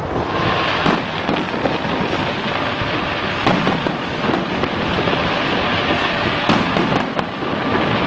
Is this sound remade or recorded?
recorded